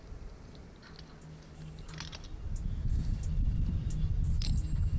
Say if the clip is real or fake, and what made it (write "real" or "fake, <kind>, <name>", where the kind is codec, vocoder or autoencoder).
real